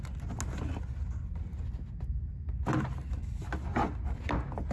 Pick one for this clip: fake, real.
real